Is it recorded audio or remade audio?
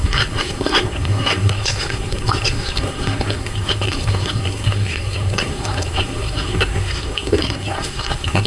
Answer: remade